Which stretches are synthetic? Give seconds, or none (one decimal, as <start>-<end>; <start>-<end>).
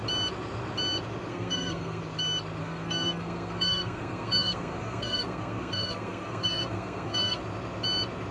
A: 1.3-2.0; 2.6-7.4